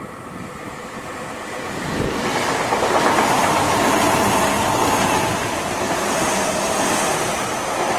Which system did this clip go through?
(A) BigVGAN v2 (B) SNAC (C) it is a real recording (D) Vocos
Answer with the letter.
C